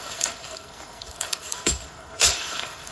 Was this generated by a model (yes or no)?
yes